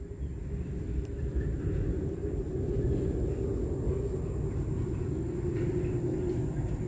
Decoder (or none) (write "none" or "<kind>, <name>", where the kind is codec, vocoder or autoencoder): none